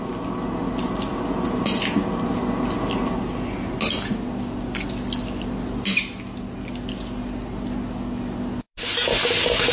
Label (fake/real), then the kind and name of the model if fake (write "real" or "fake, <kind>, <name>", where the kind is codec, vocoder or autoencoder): real